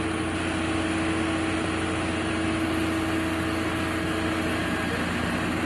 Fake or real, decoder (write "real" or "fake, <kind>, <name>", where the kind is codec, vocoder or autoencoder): real